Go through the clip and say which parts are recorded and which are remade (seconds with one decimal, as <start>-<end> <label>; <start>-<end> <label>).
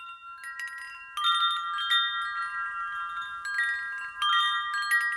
0.0-5.2 recorded